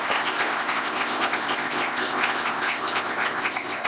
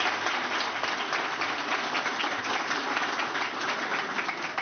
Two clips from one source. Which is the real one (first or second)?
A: second